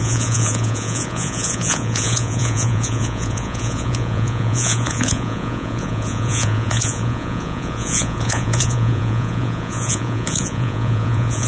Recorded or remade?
remade